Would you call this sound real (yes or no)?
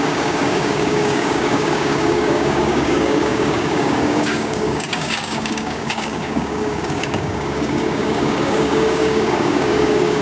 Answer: no